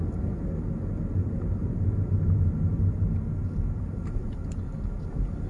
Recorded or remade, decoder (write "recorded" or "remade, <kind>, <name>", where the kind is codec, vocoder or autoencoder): recorded